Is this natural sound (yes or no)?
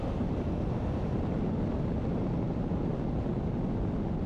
yes